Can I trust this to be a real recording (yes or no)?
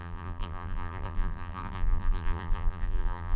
no